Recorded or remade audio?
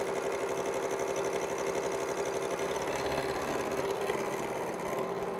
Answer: recorded